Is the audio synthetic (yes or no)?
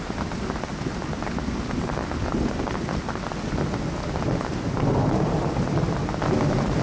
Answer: no